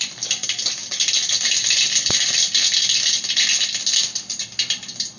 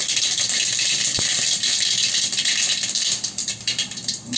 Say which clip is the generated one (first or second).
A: second